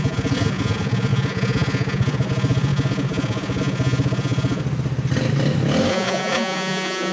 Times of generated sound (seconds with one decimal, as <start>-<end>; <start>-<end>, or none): 0.0-4.6; 5.9-7.1